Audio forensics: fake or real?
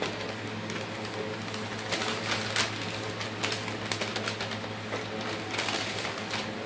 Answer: real